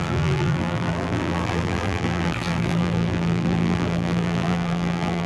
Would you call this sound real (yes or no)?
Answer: no